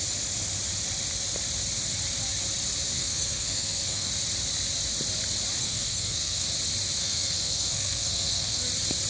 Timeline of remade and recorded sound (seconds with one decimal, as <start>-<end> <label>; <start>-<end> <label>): 0.0-3.0 recorded; 3.0-4.1 remade; 4.1-5.6 recorded; 5.6-6.5 remade; 6.5-7.0 recorded; 7.0-8.6 remade; 8.6-9.1 recorded